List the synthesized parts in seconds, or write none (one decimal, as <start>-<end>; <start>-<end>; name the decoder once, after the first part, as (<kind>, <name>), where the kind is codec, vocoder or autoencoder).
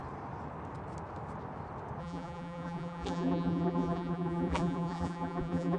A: 2.0-5.8 (vocoder, BigVGAN v2)